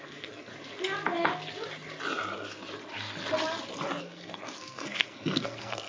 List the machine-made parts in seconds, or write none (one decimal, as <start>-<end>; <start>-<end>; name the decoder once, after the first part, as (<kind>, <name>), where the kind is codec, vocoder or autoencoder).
0.0-0.5 (codec, SNAC); 4.0-5.9